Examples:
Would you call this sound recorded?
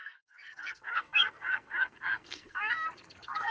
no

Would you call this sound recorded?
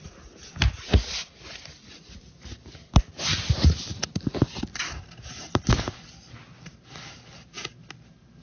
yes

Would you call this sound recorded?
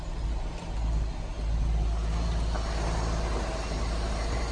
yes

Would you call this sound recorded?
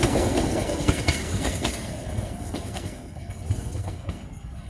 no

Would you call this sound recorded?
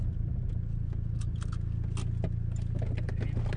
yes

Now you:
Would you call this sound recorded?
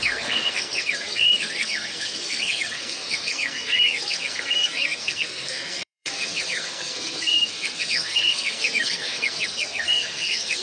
no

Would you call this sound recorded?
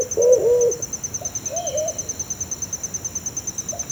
yes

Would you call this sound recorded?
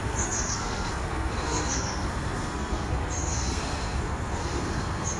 no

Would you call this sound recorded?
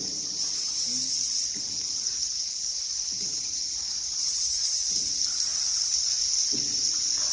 yes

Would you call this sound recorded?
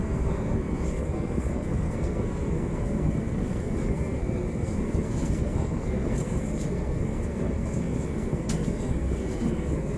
no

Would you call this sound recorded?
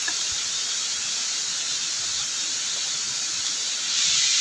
yes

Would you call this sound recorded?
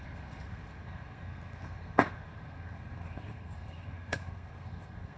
no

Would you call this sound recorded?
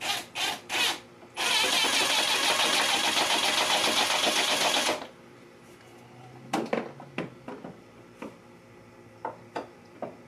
yes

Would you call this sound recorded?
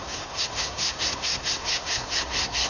no